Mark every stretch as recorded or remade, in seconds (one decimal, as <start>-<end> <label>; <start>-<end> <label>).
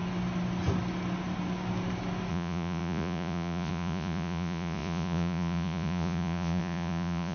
0.0-2.3 recorded; 2.3-7.3 remade